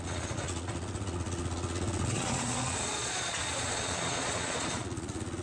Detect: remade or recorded remade